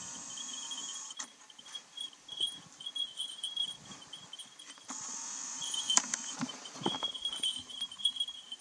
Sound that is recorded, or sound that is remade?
remade